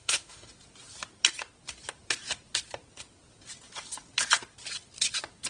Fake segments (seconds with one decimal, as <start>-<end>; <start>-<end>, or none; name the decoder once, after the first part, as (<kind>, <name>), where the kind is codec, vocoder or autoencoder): 0.0-0.5 (autoencoder, DAC-VAE)